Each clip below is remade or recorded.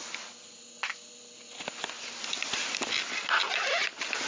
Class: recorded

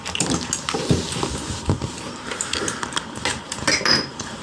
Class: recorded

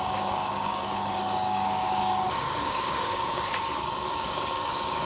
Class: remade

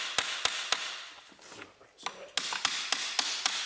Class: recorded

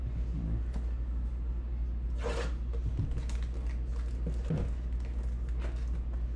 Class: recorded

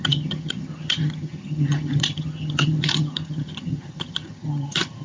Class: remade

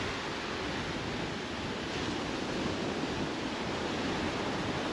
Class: recorded